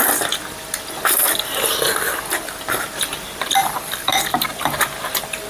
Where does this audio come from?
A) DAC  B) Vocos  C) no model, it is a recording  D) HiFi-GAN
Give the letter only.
C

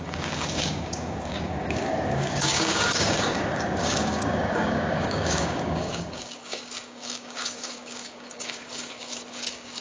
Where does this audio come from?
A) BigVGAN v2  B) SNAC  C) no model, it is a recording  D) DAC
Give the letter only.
D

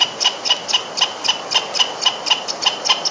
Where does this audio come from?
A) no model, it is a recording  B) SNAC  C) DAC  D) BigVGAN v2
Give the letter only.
A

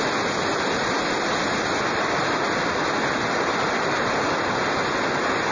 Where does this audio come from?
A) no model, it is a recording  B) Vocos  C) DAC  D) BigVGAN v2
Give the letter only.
A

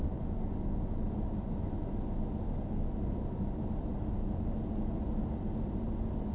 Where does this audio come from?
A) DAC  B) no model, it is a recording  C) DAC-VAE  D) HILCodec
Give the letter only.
B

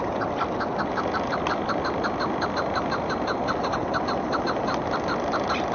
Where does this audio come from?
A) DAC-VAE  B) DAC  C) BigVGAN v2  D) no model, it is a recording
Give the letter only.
D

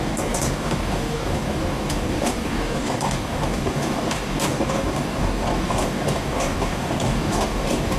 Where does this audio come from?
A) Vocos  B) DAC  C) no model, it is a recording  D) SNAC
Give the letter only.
B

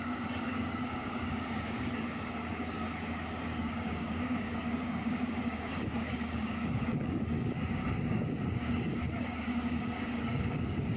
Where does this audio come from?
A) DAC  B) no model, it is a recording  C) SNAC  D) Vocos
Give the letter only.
A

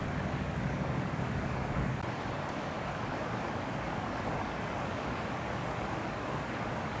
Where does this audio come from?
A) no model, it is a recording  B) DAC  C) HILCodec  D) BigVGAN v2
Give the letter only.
B